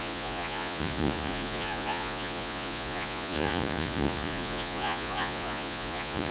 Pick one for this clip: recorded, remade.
remade